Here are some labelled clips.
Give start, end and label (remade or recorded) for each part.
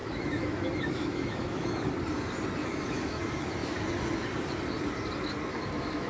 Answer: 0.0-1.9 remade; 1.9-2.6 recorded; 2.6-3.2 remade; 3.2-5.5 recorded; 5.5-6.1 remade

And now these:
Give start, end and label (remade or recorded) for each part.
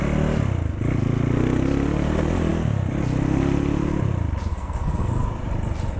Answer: 0.0-4.5 recorded; 4.5-5.1 remade; 5.1-6.0 recorded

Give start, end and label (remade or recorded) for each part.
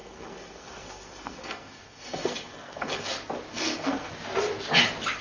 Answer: 0.0-3.1 remade; 3.1-3.5 recorded; 3.5-4.1 remade; 4.1-5.2 recorded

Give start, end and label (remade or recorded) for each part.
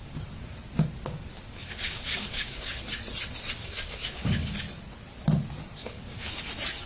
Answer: 0.0-1.6 recorded; 1.6-2.8 remade; 2.8-3.6 recorded; 3.6-4.5 remade; 4.5-5.8 recorded; 5.8-6.4 remade; 6.4-6.9 recorded